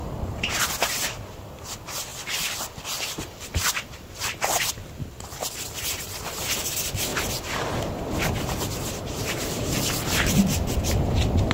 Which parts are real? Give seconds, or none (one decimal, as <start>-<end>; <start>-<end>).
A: 0.0-0.6; 7.1-11.5